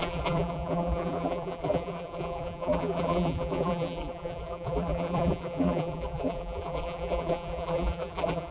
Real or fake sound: fake